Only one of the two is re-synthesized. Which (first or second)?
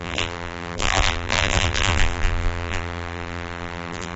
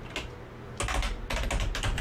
first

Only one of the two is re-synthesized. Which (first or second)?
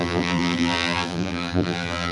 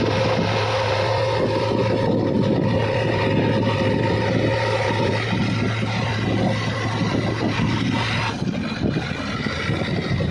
first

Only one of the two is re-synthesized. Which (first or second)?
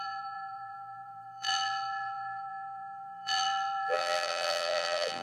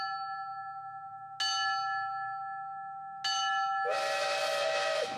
first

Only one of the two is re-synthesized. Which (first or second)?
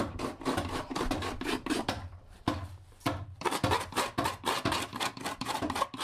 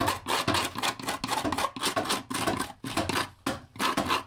first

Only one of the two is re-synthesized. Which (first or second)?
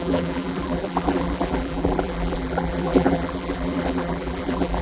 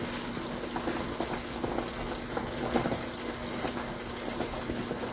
first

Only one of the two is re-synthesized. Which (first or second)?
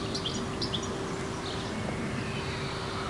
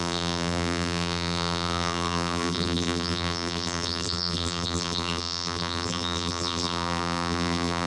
second